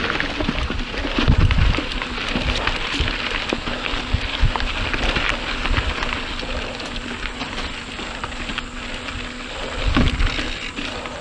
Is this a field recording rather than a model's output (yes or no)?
yes